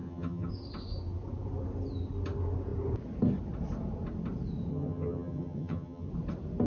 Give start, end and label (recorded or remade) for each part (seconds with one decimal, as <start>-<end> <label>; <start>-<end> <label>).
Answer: 0.0-0.5 remade; 0.5-4.7 recorded; 4.7-6.1 remade; 6.1-6.7 recorded